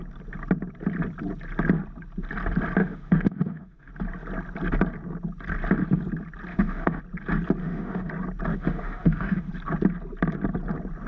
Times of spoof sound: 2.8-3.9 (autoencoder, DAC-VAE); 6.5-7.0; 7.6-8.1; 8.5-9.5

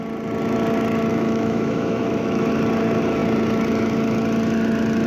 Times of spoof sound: 1.1-2.5 (autoencoder, DAC-VAE)

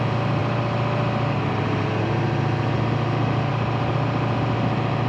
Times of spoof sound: none

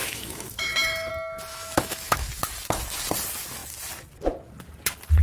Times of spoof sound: 0.0-1.1 (autoencoder, DAC-VAE); 1.5-2.3

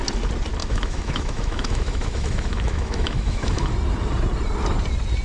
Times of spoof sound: 0.6-3.7 (autoencoder, DAC-VAE)